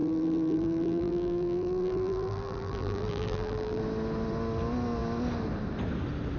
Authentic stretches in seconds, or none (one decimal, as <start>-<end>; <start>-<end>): 3.8-6.4